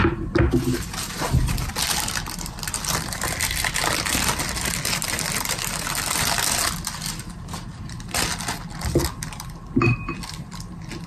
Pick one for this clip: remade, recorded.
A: recorded